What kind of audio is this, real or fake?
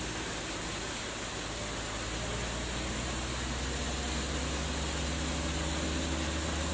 real